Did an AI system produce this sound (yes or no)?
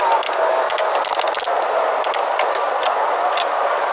no